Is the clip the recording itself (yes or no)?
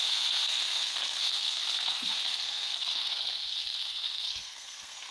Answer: no